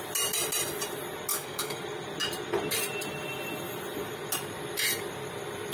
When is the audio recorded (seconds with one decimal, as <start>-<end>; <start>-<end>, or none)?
0.0-1.3; 1.8-5.7